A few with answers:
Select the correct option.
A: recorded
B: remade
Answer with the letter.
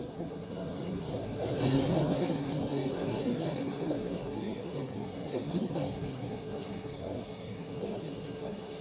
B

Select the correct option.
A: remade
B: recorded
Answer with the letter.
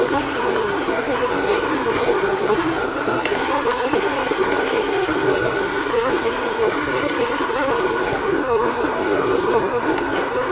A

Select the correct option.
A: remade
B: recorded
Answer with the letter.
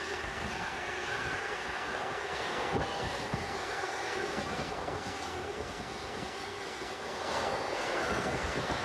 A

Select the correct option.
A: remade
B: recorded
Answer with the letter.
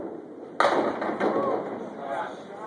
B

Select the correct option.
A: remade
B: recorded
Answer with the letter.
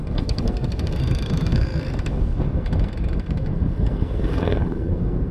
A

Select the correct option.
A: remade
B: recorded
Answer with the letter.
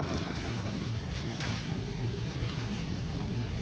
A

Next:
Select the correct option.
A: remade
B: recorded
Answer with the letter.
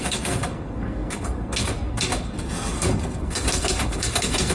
A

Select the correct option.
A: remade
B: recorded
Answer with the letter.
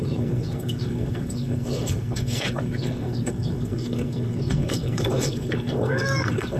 A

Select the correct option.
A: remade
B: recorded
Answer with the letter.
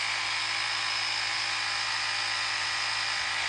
B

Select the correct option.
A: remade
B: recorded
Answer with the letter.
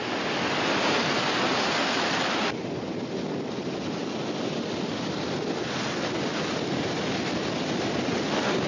B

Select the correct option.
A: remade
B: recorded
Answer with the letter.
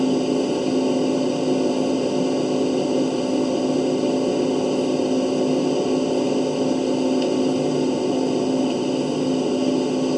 B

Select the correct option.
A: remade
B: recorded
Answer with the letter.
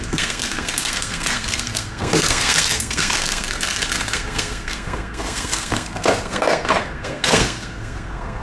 A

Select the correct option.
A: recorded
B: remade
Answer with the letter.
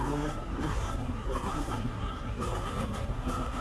B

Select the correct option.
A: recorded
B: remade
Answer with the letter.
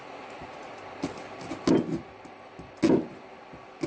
A